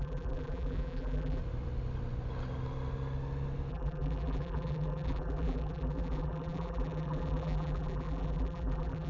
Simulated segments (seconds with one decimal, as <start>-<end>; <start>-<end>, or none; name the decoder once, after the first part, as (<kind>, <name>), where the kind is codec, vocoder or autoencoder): 0.0-1.4 (vocoder, BigVGAN v2); 3.7-9.1